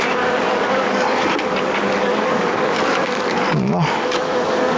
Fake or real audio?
fake